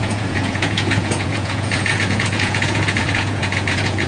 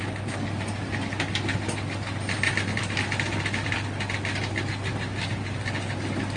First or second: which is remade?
first